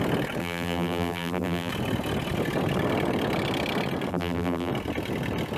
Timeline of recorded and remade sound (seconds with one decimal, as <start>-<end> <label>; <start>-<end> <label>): 0.0-0.4 recorded; 0.4-1.7 remade; 1.7-4.1 recorded; 4.1-4.7 remade; 4.7-5.6 recorded